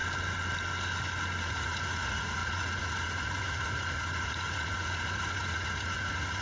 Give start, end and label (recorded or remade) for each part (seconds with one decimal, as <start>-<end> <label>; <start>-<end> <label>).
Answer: 0.0-1.4 recorded; 1.4-6.4 remade